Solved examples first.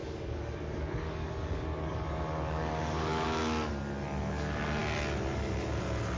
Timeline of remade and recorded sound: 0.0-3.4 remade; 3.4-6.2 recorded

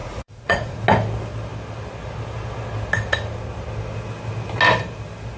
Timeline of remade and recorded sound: 0.0-0.8 remade; 0.8-5.4 recorded